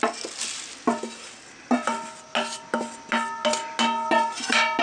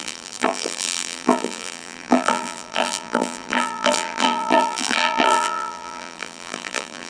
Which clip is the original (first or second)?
first